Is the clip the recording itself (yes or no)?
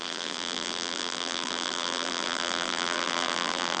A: no